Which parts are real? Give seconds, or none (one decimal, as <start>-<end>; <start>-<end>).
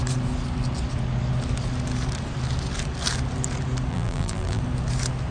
0.0-3.9; 4.6-5.3